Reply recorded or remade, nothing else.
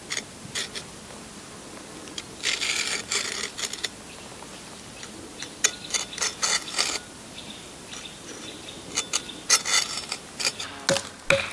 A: recorded